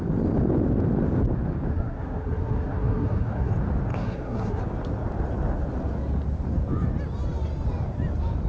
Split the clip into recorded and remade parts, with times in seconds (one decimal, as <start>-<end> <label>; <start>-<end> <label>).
0.0-1.7 recorded; 1.7-3.5 remade; 3.5-3.9 recorded; 3.9-4.6 remade; 4.6-8.5 recorded